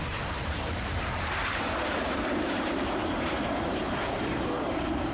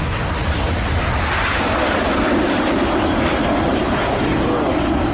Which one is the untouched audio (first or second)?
second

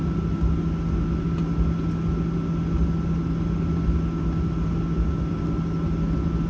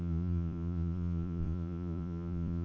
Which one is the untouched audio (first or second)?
first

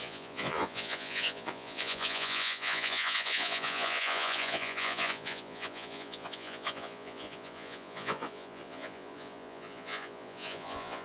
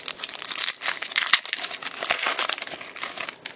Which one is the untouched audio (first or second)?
second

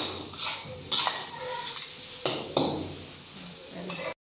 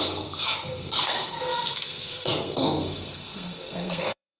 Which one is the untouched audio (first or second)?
first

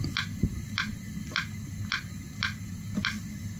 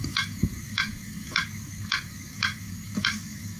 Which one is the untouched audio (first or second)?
first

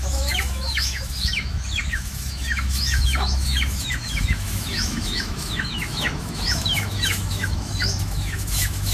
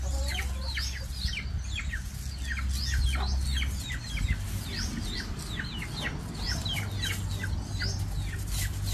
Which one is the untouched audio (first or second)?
second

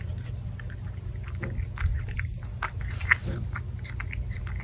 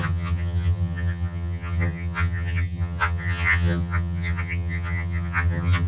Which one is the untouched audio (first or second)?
first